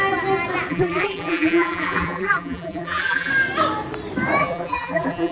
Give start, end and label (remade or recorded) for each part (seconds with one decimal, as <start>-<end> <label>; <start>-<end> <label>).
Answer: 0.0-0.7 recorded; 0.7-3.3 remade; 3.3-4.4 recorded; 4.4-5.3 remade